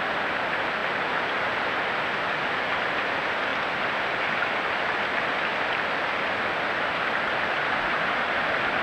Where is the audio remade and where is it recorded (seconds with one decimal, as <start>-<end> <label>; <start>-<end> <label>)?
0.0-8.8 recorded